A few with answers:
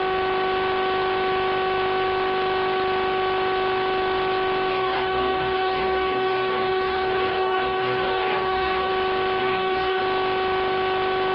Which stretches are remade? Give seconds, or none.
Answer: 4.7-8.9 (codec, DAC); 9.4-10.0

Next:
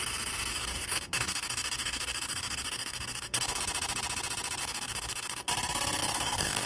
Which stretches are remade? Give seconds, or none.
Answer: 0.5-3.6 (codec, DAC); 4.6-5.5; 6.0-6.7

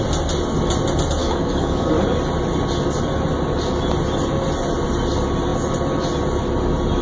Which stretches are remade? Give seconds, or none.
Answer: 1.2-1.9 (codec, DAC)